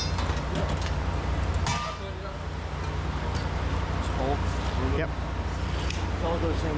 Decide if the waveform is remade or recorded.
recorded